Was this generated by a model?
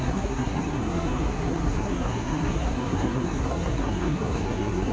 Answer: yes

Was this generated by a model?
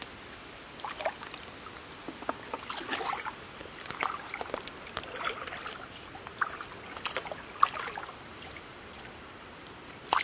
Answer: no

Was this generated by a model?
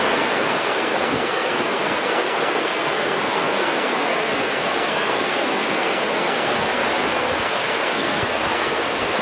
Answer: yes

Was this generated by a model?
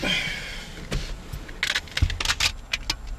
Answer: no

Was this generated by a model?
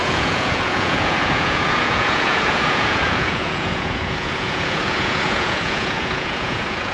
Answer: yes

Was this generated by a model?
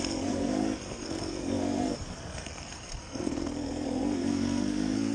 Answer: yes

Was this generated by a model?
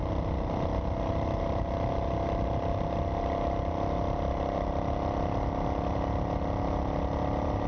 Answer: no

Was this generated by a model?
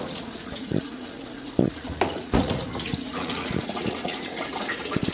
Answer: yes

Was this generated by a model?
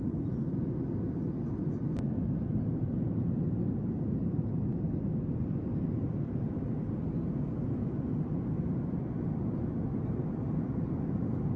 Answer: no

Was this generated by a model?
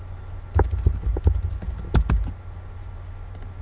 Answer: no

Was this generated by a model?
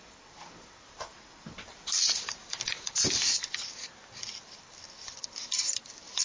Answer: yes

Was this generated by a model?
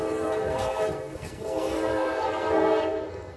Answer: yes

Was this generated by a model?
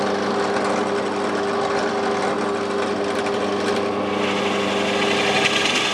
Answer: no